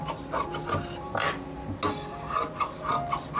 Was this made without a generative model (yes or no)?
yes